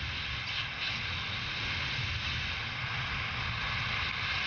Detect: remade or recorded recorded